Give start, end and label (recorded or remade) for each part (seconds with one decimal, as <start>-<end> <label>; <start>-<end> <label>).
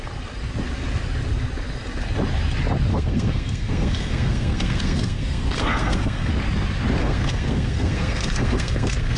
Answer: 0.0-2.9 recorded; 2.9-6.3 remade; 6.3-7.0 recorded; 7.0-9.2 remade